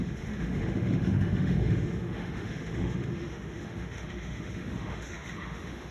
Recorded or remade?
remade